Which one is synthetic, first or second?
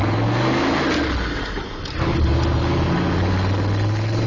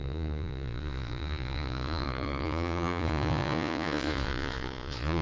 second